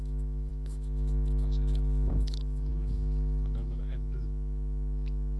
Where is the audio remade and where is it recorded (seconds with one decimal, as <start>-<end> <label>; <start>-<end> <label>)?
0.0-5.4 remade